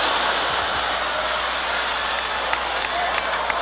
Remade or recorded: recorded